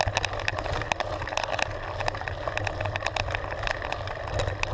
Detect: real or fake real